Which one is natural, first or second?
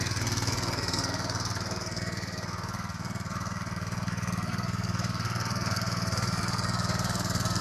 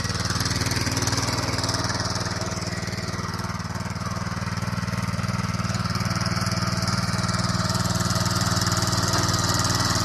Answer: second